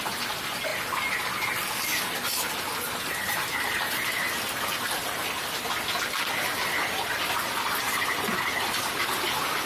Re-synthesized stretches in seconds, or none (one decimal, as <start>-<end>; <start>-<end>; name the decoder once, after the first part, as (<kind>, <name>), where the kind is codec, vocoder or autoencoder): none